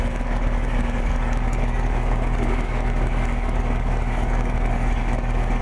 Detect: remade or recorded remade